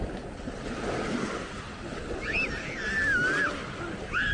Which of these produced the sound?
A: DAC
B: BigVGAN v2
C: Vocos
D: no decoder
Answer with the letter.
D